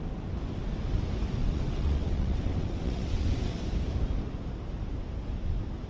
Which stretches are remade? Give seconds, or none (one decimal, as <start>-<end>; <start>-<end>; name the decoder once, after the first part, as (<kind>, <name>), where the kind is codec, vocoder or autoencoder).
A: 1.4-3.6 (vocoder, WaveNeXt)